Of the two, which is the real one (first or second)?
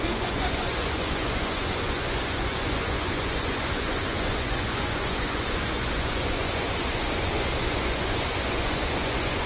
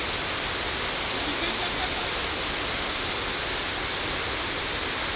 second